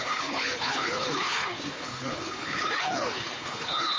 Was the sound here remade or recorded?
remade